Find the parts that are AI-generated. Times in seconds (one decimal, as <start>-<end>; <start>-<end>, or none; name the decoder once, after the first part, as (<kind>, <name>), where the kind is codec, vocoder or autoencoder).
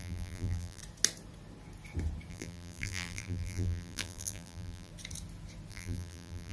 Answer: 0.0-0.8 (vocoder, BigVGAN v2); 2.3-4.9; 5.7-6.5